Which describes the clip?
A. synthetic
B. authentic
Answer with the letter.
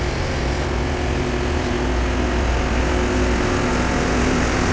B